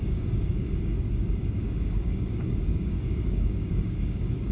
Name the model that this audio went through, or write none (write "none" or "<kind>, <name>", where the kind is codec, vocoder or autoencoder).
codec, DAC